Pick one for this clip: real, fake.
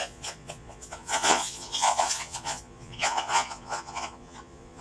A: fake